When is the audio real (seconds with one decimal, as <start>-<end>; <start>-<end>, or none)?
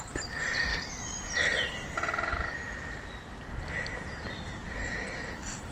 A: 0.0-5.7